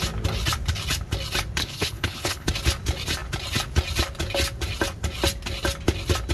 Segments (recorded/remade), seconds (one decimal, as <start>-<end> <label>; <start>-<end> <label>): 0.0-1.6 recorded; 1.6-2.5 remade; 2.5-6.3 recorded